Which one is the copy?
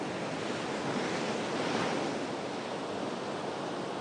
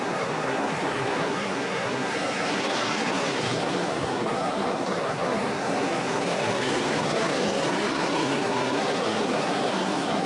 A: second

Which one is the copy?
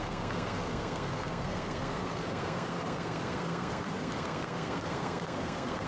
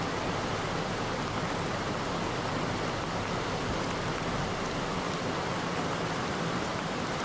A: first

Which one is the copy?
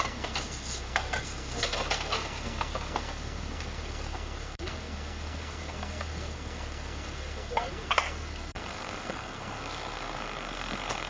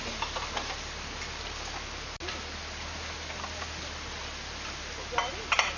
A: first